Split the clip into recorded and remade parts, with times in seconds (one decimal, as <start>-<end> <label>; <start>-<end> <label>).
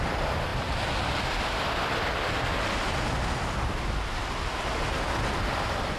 0.0-6.0 recorded